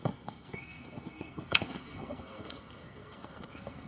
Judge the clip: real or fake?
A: fake